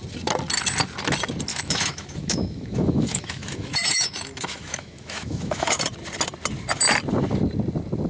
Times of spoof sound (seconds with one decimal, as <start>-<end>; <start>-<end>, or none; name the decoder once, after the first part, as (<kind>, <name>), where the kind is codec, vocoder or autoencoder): 1.5-5.8 (autoencoder, DAC-VAE)